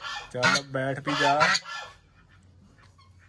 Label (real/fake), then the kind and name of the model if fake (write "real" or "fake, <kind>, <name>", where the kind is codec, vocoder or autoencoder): real